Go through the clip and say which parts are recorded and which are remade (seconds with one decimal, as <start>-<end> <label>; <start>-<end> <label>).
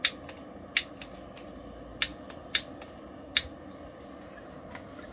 0.0-2.1 recorded; 2.1-2.7 remade; 2.7-5.1 recorded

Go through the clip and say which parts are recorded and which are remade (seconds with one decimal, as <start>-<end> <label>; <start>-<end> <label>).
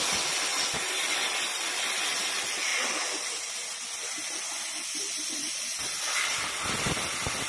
0.0-7.5 recorded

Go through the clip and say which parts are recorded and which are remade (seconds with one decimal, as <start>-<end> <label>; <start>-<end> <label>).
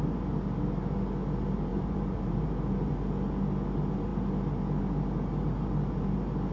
0.0-1.7 recorded; 1.7-2.9 remade; 2.9-6.5 recorded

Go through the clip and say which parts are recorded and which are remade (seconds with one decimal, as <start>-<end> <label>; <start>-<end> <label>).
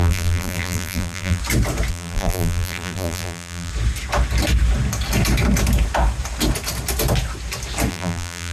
0.0-1.4 remade; 1.4-1.9 recorded; 1.9-3.7 remade; 3.7-7.9 recorded; 7.9-8.5 remade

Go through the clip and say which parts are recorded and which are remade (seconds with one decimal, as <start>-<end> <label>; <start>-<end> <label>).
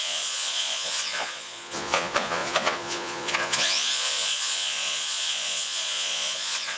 0.0-6.8 remade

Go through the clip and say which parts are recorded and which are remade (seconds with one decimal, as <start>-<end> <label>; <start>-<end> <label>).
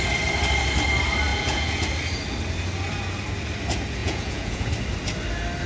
0.0-1.3 recorded; 1.3-1.9 remade; 1.9-4.0 recorded; 4.0-4.7 remade; 4.7-5.7 recorded